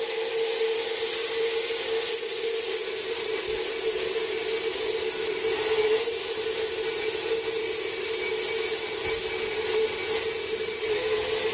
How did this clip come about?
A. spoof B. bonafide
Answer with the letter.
B